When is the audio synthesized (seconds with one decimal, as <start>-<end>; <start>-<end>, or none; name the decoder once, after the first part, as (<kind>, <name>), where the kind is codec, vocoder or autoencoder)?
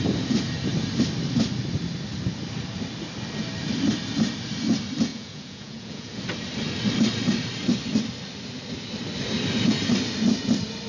5.1-6.2 (vocoder, Vocos)